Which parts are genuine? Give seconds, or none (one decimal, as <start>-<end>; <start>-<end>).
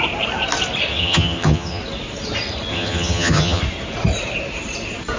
0.0-0.9; 1.8-2.7; 3.6-5.2